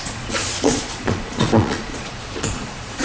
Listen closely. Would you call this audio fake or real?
fake